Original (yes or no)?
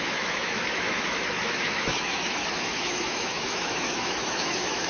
no